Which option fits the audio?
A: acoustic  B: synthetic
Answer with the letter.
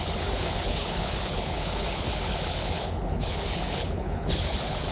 B